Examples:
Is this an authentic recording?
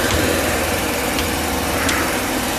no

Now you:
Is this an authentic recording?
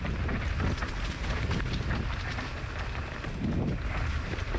yes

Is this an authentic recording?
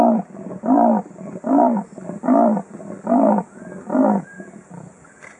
no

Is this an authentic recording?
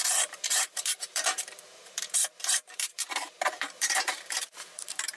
no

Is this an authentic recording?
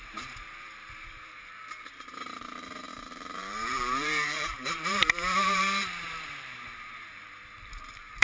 no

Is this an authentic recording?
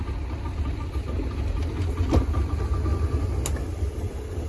yes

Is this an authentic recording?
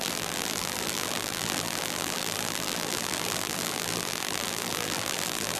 no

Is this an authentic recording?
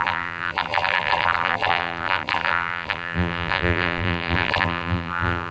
no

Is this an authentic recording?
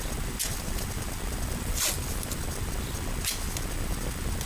yes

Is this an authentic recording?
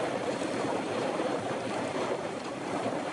no